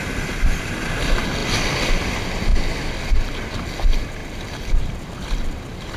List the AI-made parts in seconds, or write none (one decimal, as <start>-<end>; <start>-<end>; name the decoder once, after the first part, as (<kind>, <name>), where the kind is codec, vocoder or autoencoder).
none